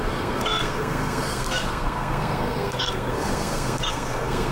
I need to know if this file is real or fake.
fake